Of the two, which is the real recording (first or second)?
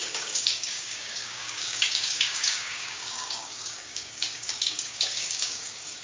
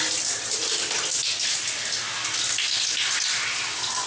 second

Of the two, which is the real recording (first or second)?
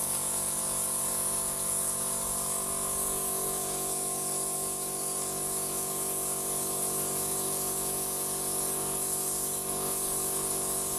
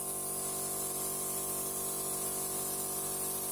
second